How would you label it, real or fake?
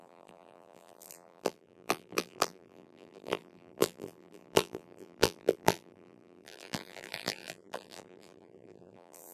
fake